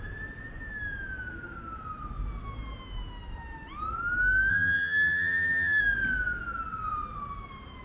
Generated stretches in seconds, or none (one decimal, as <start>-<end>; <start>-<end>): 4.5-5.8